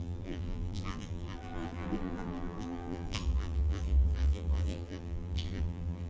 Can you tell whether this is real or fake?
fake